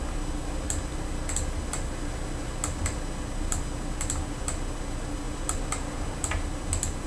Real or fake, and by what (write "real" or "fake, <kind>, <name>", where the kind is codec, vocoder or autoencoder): real